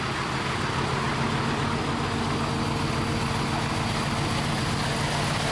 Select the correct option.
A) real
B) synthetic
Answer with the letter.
A